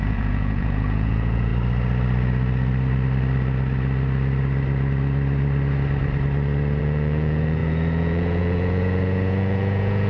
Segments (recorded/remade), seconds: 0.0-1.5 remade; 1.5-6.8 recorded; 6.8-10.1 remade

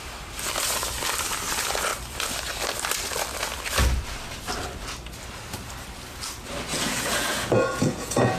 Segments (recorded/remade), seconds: 0.0-6.7 recorded; 6.7-8.4 remade

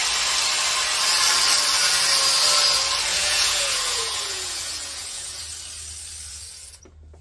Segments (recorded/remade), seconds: 0.0-3.1 recorded; 3.1-5.4 remade; 5.4-6.3 recorded; 6.3-6.8 remade; 6.8-7.2 recorded